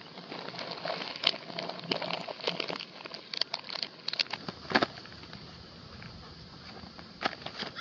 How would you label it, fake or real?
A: real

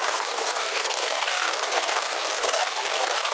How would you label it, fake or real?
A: fake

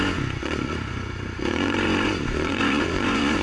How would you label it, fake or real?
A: fake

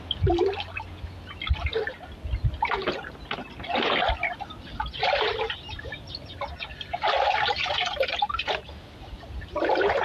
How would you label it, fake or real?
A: real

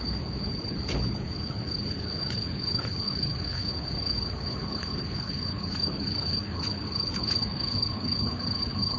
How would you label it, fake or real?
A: fake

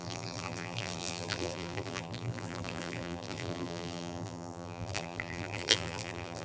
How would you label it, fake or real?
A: fake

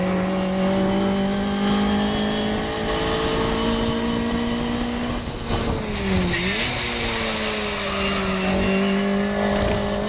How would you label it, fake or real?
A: real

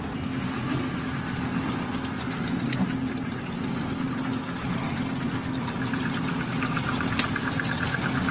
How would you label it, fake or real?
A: real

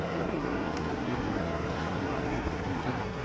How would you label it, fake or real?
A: fake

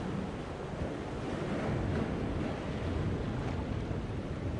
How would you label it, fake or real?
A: real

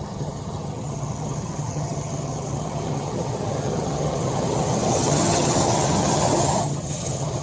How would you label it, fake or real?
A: fake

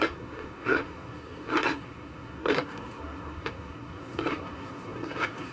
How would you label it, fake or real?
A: fake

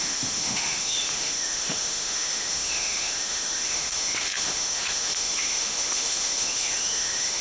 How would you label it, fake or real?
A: fake